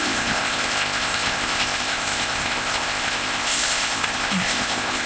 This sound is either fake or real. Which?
fake